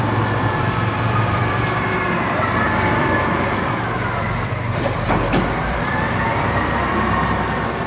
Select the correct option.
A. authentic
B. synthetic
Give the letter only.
B